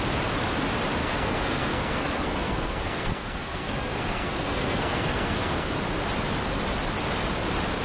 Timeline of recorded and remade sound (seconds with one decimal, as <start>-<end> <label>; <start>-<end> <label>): 0.0-1.0 recorded; 1.0-5.7 remade; 5.7-7.8 recorded